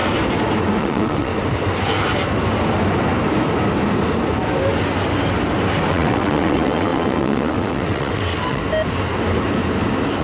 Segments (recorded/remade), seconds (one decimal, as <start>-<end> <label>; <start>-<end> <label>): 0.0-0.8 recorded; 0.8-1.3 remade; 1.3-5.9 recorded; 5.9-8.6 remade; 8.6-10.2 recorded